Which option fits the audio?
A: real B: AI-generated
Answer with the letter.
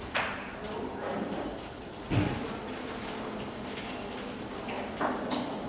A